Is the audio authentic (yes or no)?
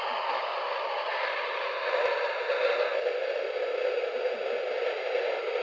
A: yes